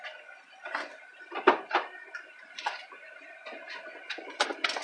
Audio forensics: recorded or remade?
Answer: recorded